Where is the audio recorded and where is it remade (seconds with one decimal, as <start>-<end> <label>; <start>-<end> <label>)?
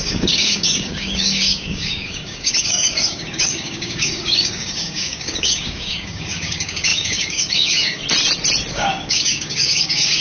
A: 0.0-8.0 remade; 8.0-8.7 recorded; 8.7-10.2 remade